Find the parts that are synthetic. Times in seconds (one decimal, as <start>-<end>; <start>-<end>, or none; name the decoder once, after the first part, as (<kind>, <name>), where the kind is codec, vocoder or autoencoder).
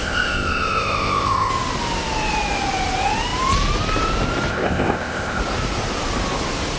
0.0-1.5 (codec, ZipCodec); 4.5-5.4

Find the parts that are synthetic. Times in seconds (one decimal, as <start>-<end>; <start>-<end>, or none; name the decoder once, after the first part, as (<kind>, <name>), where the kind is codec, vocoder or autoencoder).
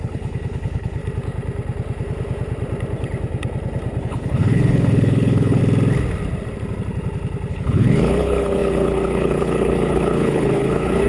0.0-1.0 (codec, HILCodec); 4.0-5.6; 7.5-11.1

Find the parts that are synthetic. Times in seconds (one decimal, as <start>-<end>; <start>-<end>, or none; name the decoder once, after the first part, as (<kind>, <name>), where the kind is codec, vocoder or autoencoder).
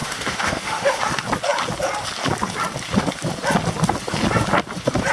0.0-1.0 (autoencoder, DAC-VAE)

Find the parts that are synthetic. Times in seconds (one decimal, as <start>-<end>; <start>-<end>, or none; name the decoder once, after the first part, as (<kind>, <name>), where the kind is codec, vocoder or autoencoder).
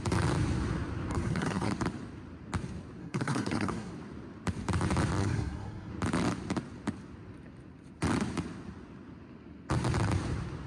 1.1-1.7 (codec, SNAC); 3.0-3.9; 5.2-5.9